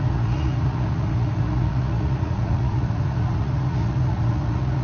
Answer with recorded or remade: remade